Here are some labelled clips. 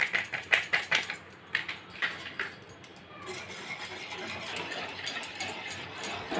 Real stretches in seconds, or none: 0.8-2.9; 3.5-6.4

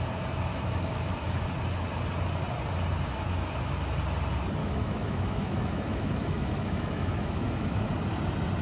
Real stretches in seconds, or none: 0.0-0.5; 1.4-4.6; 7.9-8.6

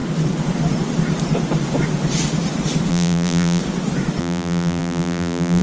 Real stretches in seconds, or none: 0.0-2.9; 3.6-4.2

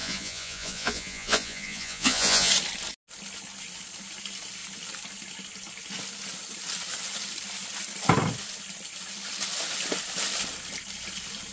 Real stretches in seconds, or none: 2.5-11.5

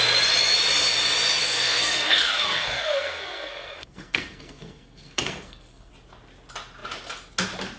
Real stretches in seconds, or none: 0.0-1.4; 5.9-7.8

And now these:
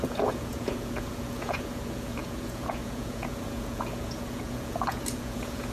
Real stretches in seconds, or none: none